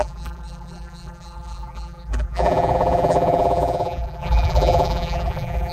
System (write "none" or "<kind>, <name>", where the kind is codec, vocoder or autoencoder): vocoder, BigVGAN v2